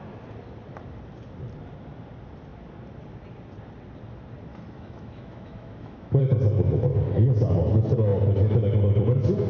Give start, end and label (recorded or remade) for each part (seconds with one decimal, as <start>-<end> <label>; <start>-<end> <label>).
0.0-4.5 recorded; 4.5-6.2 remade; 6.2-9.5 recorded